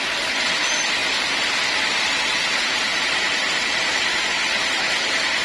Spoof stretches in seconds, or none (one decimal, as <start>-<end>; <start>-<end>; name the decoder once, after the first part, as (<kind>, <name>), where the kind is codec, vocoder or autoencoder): none